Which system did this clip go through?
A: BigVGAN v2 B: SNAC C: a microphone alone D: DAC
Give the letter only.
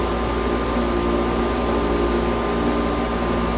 C